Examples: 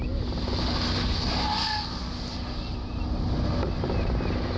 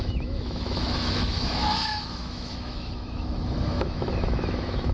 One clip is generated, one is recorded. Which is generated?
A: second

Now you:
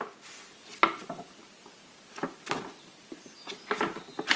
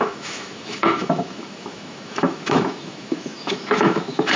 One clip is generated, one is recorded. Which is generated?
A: second